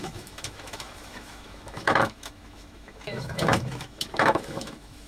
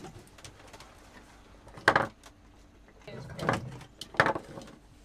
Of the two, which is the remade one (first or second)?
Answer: first